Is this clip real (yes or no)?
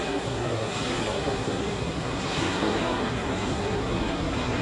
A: no